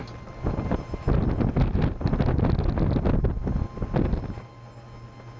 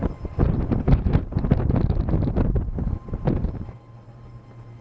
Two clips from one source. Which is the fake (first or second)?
second